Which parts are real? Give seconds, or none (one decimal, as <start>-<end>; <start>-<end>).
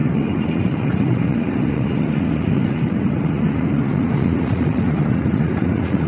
none